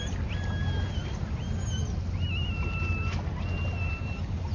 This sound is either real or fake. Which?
real